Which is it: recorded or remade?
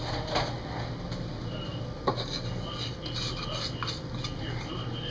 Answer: recorded